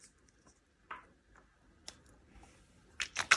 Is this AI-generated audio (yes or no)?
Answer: no